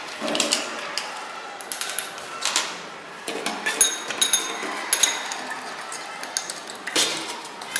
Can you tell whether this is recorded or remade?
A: recorded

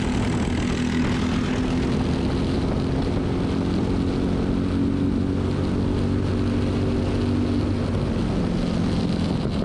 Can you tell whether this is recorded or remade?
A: recorded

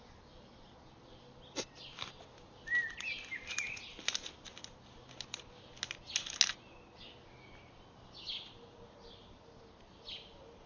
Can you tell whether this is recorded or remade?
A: recorded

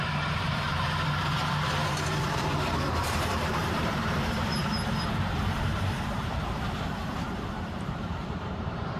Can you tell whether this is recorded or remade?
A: remade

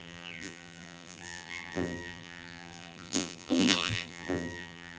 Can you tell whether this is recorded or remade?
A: remade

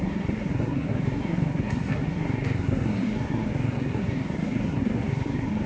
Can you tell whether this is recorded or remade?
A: remade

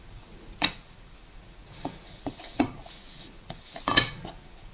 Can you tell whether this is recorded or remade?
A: remade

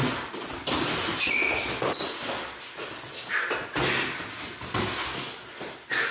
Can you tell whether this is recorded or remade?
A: recorded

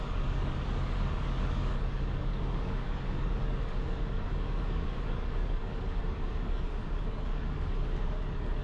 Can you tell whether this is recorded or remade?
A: remade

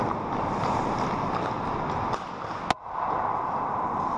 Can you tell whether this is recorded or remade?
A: recorded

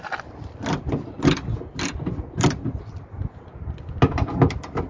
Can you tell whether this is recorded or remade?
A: recorded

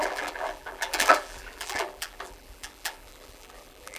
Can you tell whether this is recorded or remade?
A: remade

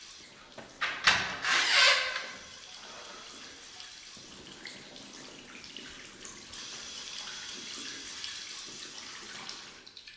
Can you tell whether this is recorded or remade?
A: recorded